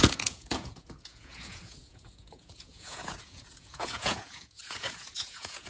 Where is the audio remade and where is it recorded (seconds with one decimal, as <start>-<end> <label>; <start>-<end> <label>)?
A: 0.0-5.7 remade